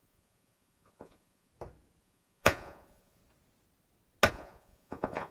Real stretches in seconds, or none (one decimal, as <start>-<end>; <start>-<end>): 1.5-2.0; 3.2-4.3